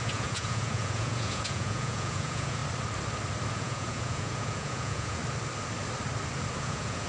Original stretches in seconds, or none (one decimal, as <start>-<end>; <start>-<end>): 2.6-3.5; 5.2-6.6